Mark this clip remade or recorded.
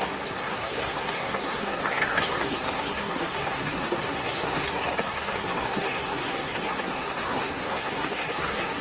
remade